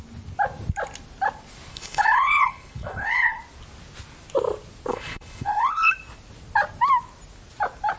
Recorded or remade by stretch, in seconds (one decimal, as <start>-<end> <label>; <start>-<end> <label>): 0.0-1.7 recorded; 1.7-3.4 remade; 3.4-4.9 recorded; 4.9-5.9 remade; 5.9-8.0 recorded